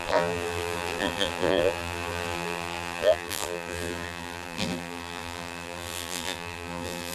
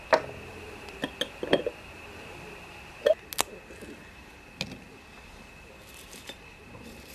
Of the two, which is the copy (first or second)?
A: first